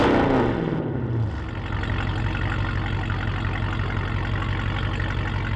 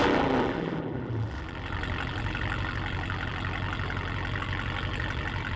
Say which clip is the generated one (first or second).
second